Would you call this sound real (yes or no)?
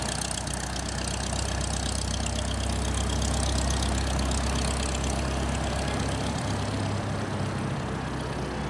yes